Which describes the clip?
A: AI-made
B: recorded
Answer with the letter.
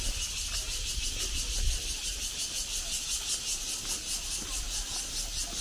B